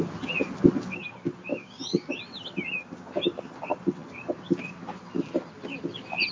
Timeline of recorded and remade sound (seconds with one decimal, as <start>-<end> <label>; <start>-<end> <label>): 0.0-1.5 recorded; 1.5-2.2 remade; 2.2-6.3 recorded

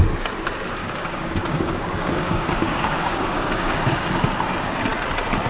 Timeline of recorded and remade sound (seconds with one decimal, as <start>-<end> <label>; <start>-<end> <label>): 0.0-0.8 recorded; 0.8-4.1 remade; 4.1-5.5 recorded

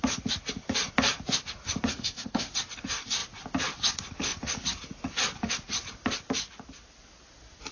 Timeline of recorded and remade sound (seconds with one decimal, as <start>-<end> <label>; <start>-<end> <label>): 0.0-1.9 recorded; 1.9-2.5 remade; 2.5-7.7 recorded

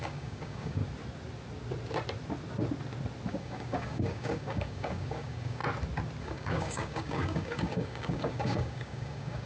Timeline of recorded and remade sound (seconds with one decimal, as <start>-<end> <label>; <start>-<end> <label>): 0.0-0.8 remade; 0.8-3.3 recorded; 3.3-5.6 remade; 5.6-6.2 recorded; 6.2-9.5 remade

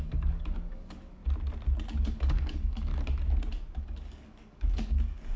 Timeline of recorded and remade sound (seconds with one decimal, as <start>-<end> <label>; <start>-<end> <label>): 0.0-1.2 remade; 1.2-2.0 recorded; 2.0-2.9 remade; 2.9-3.8 recorded; 3.8-5.4 remade

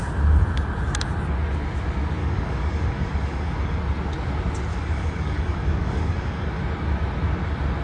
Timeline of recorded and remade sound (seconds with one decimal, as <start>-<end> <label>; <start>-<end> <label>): 0.0-2.2 recorded; 2.2-3.8 remade; 3.8-4.7 recorded; 4.7-6.6 remade; 6.6-7.8 recorded

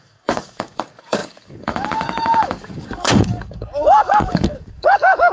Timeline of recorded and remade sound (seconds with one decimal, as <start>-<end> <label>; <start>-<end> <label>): 0.0-5.3 remade

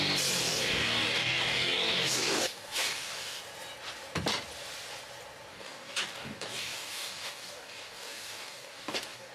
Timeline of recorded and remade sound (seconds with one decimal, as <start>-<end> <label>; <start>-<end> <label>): 0.0-0.4 recorded; 0.4-3.4 remade; 3.4-5.5 recorded; 5.5-9.3 remade